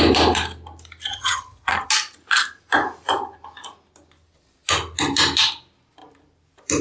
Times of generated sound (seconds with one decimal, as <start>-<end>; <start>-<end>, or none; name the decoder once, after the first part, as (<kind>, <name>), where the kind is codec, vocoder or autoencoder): 1.1-1.9 (vocoder, HiFi-GAN)